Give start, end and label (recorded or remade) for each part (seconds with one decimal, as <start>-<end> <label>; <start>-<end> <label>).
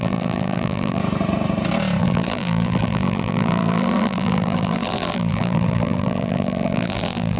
0.0-1.0 remade; 1.0-2.0 recorded; 2.0-7.4 remade